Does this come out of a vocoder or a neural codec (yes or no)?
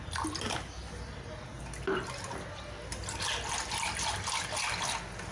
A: no